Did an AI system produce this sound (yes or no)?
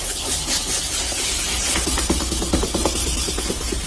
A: no